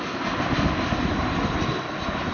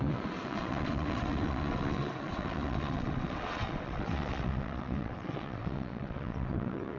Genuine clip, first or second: first